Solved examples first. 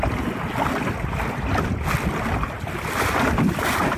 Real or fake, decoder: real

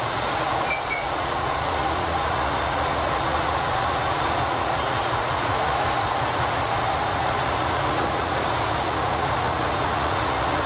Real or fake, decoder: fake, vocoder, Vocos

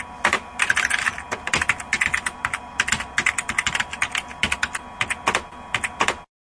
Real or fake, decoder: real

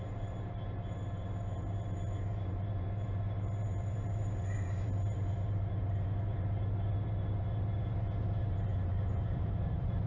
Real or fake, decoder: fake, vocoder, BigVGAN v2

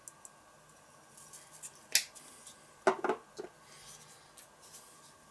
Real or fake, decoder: real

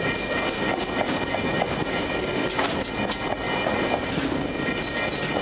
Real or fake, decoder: real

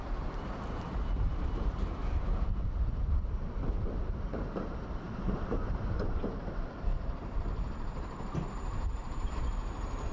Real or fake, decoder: fake, vocoder, BigVGAN v2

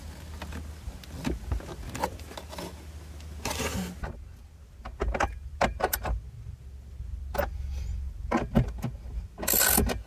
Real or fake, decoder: real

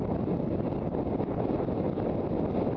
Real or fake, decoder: real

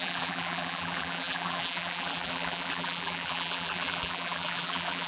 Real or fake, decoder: fake, vocoder, BigVGAN v2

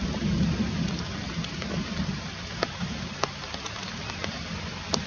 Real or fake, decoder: fake, vocoder, BigVGAN v2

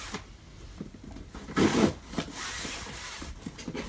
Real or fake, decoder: real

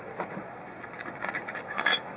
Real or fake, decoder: fake, vocoder, Vocos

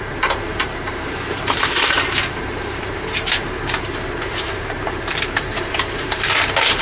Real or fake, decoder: fake, vocoder, BigVGAN v2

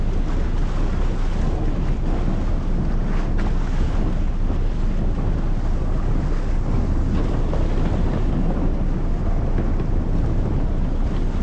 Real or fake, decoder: real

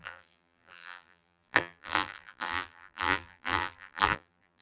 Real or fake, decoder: fake, vocoder, BigVGAN v2